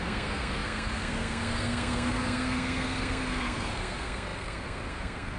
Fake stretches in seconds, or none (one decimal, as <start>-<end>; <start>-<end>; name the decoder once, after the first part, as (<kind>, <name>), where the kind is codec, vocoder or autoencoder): 0.0-5.4 (codec, SNAC)